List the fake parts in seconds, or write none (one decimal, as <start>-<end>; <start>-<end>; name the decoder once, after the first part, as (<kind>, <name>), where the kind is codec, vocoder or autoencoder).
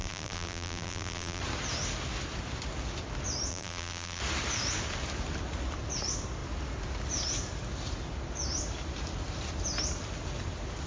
0.0-1.4 (vocoder, BigVGAN v2); 3.5-4.2